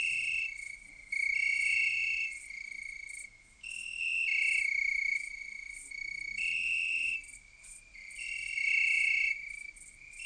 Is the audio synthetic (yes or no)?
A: no